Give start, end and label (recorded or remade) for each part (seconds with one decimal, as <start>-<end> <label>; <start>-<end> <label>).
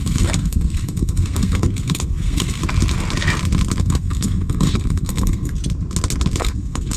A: 0.0-2.6 remade; 2.6-3.8 recorded; 3.8-5.6 remade; 5.6-6.4 recorded; 6.4-7.0 remade